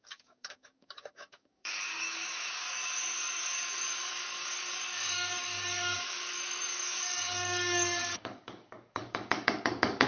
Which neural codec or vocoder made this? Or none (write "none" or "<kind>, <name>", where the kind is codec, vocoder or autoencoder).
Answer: codec, DAC